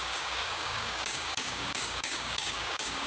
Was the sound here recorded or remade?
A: remade